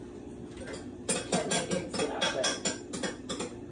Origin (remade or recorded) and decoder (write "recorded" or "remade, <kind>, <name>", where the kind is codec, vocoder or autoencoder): recorded